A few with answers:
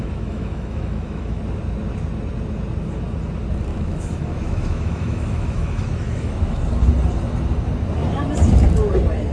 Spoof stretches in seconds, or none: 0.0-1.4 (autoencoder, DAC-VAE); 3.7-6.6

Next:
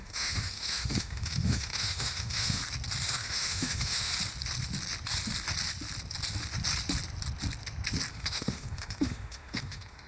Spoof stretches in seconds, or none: 0.0-2.6 (autoencoder, DAC-VAE); 3.1-4.1; 8.1-10.1